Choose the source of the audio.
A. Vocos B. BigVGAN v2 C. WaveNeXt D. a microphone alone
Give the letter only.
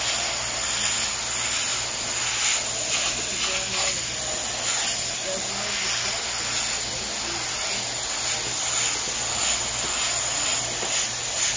D